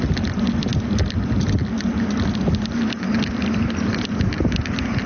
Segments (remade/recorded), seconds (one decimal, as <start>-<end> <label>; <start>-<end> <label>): 0.0-5.1 recorded